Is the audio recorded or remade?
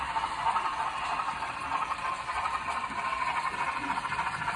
remade